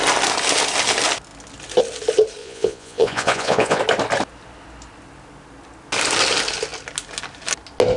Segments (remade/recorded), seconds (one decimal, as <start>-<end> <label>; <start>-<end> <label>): 0.0-2.4 recorded; 2.4-3.8 remade; 3.8-8.0 recorded